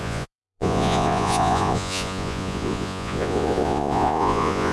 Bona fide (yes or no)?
no